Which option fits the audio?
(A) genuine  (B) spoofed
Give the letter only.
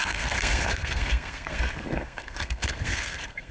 B